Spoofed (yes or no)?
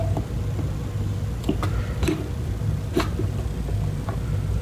no